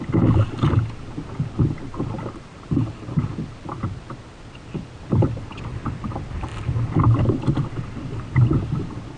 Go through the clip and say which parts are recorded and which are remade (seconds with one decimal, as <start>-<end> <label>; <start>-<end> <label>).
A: 0.0-9.2 recorded